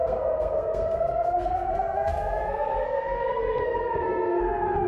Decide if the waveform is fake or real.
fake